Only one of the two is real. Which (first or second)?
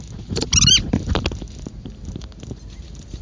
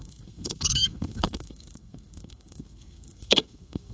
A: first